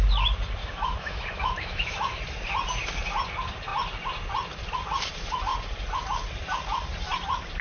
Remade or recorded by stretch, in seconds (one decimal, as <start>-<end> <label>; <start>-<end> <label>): 0.0-0.6 recorded; 0.6-2.2 remade; 2.2-7.6 recorded